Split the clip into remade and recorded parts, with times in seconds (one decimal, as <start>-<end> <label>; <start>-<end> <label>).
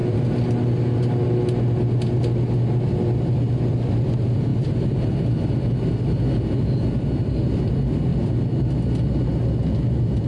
0.0-10.3 recorded